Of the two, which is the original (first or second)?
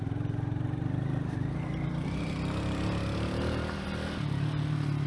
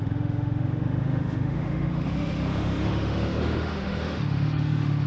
first